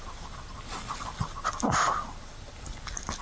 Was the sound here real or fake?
real